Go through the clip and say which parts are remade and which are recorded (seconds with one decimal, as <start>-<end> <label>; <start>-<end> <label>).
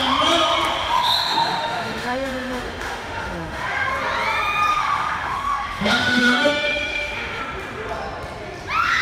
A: 0.0-0.8 recorded; 0.8-3.9 remade; 3.9-4.7 recorded; 4.7-7.4 remade; 7.4-9.0 recorded